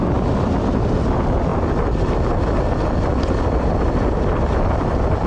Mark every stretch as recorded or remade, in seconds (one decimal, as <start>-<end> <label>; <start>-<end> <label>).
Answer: 0.0-5.3 recorded